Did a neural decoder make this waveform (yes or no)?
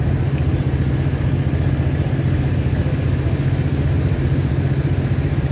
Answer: no